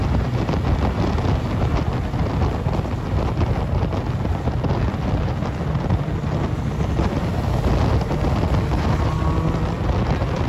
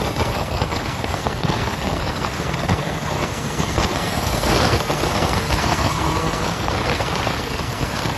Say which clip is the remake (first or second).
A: second